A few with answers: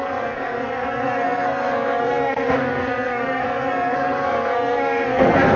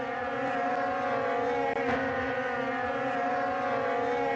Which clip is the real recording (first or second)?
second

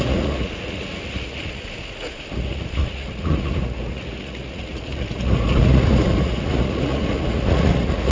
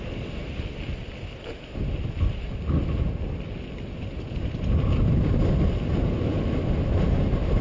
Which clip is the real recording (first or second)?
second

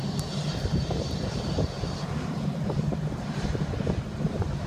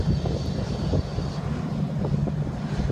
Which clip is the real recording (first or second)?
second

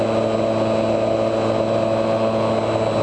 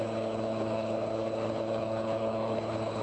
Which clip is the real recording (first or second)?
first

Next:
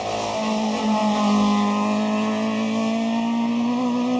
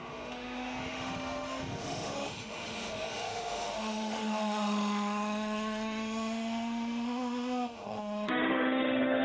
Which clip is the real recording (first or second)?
first